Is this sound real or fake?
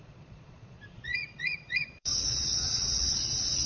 fake